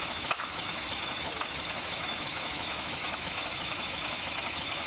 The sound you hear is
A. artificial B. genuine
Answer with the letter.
A